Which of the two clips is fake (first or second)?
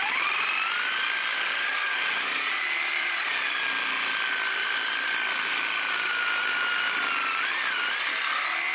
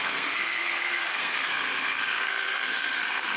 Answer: second